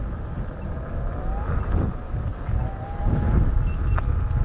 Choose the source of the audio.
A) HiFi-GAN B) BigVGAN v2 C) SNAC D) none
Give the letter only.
D